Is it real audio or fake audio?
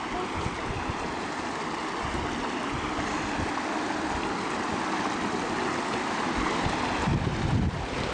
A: real